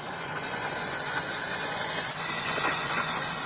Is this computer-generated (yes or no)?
yes